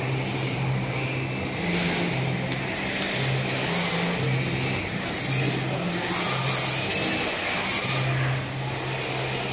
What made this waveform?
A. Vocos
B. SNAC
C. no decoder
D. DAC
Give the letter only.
C